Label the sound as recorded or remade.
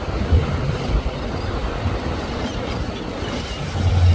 recorded